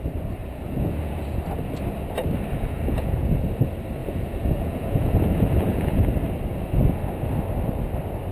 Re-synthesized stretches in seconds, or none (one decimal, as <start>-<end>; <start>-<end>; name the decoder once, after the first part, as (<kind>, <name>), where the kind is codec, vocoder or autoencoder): 0.4-1.4 (vocoder, Vocos); 2.5-3.4; 4.0-6.0